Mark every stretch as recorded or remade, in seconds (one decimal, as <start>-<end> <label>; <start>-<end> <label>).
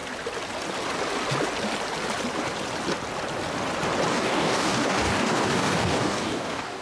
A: 0.0-4.1 recorded; 4.1-6.8 remade